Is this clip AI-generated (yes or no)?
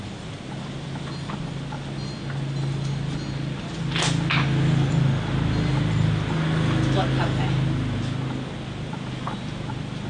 no